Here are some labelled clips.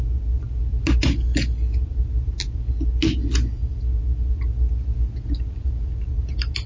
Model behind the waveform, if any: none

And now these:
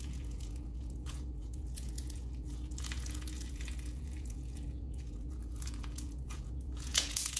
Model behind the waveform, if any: vocoder, Vocos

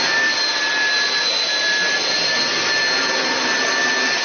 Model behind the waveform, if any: none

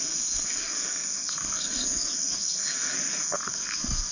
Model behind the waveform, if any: codec, SNAC